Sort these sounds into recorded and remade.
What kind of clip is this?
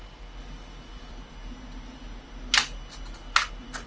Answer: recorded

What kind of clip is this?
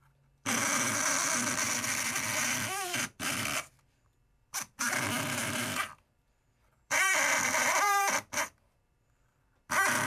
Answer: remade